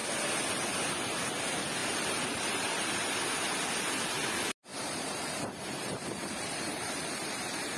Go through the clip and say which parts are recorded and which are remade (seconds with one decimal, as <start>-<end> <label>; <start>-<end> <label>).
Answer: 0.0-1.8 recorded; 1.8-3.1 remade; 3.1-4.7 recorded; 4.7-7.8 remade